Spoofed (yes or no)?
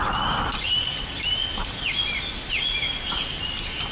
no